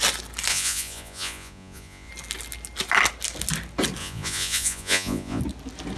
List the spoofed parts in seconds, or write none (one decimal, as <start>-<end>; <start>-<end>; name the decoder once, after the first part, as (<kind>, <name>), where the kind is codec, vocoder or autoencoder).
0.5-2.1 (vocoder, Vocos); 4.0-5.4

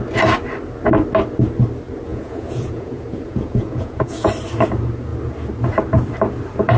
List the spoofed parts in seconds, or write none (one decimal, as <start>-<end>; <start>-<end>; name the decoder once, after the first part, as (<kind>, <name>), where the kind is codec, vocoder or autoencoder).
2.1-4.3 (vocoder, Vocos)

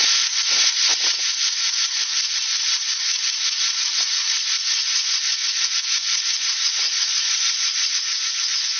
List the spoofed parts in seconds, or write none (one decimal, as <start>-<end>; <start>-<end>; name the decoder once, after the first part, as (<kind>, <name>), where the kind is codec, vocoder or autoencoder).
0.0-8.8 (vocoder, Vocos)